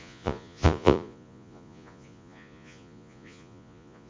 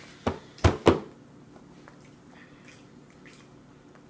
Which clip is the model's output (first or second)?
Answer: first